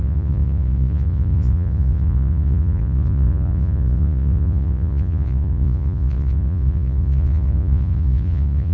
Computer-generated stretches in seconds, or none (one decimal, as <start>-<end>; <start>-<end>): 0.0-8.7